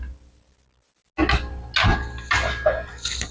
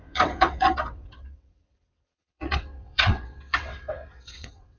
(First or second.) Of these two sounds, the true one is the first